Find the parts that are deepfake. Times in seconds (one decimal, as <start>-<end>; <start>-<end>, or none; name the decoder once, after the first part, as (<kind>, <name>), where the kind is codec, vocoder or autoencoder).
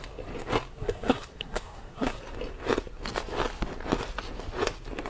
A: 0.7-2.2 (codec, SNAC)